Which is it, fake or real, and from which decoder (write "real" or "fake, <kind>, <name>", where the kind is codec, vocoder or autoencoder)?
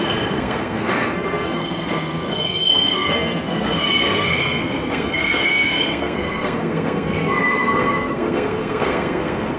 fake, codec, SNAC